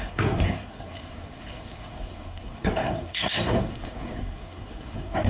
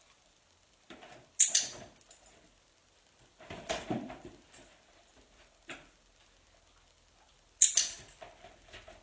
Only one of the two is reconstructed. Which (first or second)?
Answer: first